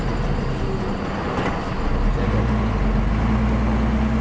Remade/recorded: recorded